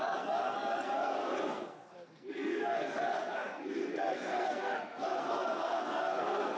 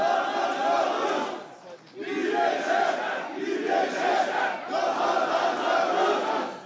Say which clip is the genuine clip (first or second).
second